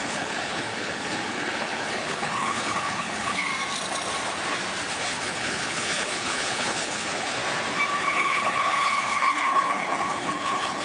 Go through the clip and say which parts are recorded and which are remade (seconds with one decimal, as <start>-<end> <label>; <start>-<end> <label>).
0.0-3.5 remade; 3.5-4.9 recorded; 4.9-7.4 remade; 7.4-8.0 recorded; 8.0-10.8 remade